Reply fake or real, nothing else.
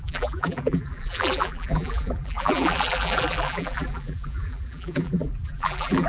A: fake